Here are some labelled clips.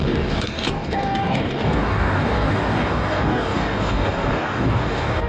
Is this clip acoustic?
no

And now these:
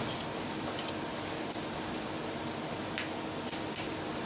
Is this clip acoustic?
yes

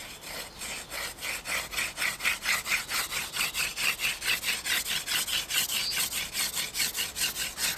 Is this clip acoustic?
yes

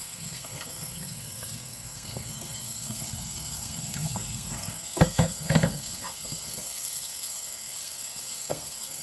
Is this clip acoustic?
no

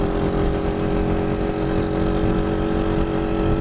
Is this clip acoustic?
yes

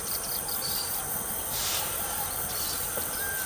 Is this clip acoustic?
no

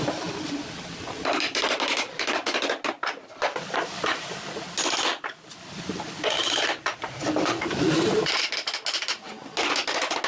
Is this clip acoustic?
yes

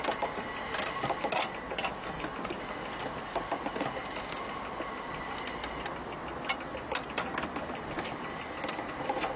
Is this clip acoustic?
yes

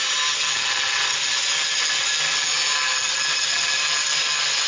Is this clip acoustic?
yes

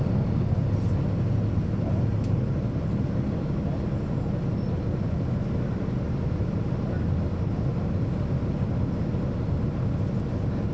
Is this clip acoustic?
yes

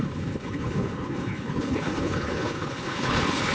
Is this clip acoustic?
no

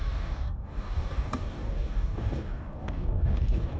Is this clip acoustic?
no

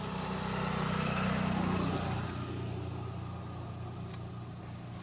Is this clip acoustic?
yes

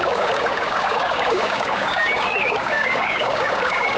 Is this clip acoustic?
no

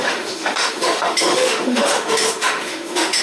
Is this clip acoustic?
no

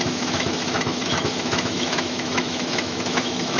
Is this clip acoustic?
no